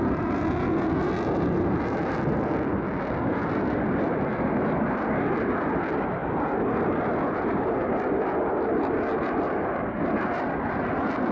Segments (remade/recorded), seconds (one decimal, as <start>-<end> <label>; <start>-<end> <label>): 0.0-11.3 recorded